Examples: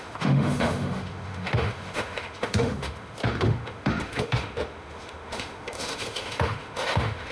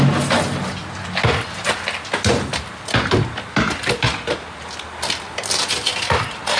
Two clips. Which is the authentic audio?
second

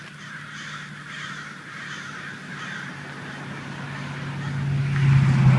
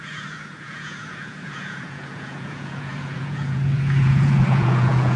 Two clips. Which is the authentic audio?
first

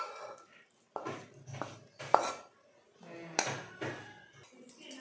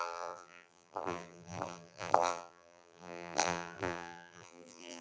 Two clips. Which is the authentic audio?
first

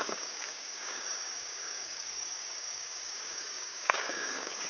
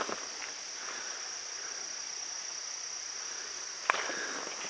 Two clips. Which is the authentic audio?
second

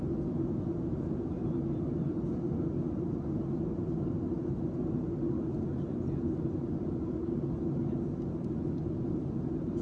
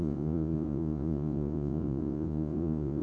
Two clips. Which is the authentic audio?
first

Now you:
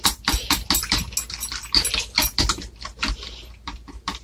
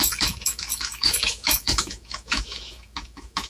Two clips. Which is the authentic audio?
first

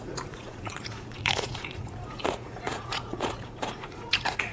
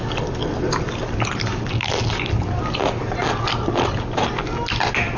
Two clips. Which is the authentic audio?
second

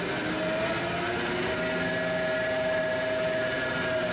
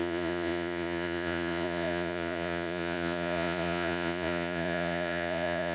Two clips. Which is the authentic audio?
first